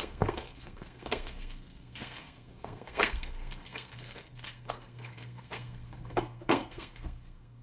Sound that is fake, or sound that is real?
fake